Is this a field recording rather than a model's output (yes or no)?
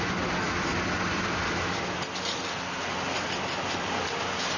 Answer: yes